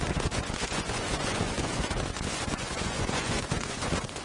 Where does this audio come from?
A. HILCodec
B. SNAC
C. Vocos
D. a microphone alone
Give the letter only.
C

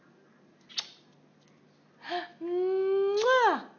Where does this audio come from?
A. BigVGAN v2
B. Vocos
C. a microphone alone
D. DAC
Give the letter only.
C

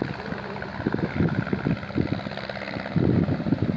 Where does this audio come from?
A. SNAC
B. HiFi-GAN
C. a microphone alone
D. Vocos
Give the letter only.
C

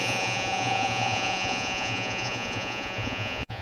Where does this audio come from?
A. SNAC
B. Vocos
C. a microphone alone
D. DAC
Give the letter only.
B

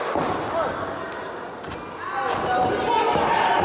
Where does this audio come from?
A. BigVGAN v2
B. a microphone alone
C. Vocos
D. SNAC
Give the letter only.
B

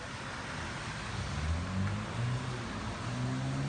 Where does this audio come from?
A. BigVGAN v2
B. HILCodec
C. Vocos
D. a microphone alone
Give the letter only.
D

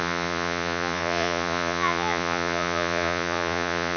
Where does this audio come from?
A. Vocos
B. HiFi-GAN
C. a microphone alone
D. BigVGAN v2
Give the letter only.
A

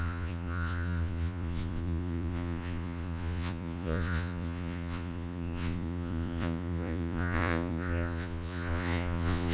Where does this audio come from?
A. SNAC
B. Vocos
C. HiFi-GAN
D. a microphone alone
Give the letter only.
B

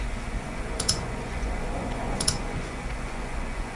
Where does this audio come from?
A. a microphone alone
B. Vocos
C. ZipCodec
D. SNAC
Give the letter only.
B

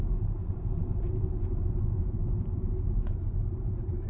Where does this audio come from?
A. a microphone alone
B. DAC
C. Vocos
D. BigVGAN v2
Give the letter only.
C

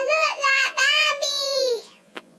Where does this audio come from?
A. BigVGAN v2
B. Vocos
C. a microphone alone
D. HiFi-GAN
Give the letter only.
B